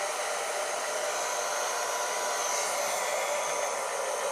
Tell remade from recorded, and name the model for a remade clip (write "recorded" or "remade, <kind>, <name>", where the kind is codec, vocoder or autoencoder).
recorded